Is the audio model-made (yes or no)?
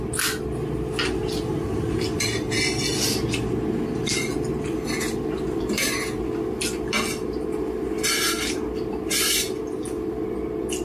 no